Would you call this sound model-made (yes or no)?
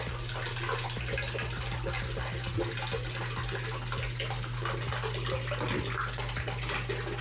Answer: no